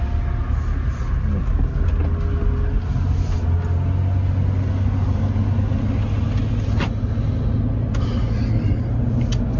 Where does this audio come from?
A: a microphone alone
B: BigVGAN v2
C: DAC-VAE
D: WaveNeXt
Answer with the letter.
A